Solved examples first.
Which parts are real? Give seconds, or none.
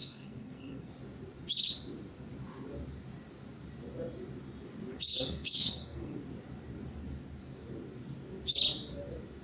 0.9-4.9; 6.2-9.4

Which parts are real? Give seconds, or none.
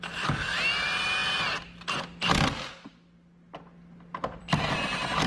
0.0-5.3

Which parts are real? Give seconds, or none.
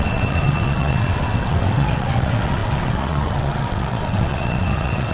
none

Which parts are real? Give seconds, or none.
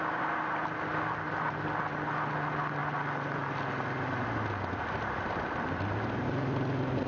0.0-7.1